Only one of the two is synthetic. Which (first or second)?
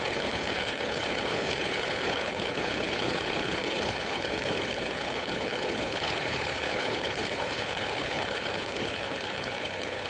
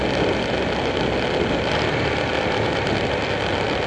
first